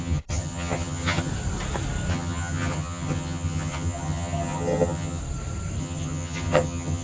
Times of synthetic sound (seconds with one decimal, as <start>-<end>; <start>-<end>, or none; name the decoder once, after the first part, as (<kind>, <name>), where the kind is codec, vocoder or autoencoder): 0.0-1.3 (vocoder, HiFi-GAN); 2.1-5.2; 5.8-7.0